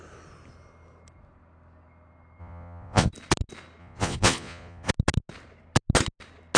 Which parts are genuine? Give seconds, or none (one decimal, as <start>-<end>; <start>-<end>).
0.0-2.4; 3.1-3.8; 4.9-6.6